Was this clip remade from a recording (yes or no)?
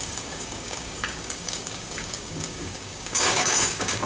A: yes